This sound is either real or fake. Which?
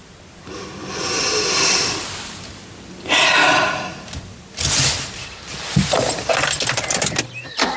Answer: real